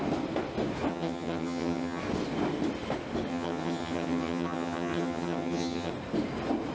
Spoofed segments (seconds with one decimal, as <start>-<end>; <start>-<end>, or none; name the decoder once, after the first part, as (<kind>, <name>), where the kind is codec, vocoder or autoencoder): 0.9-2.0 (vocoder, HiFi-GAN); 3.3-5.9